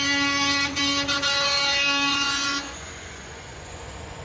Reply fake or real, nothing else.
fake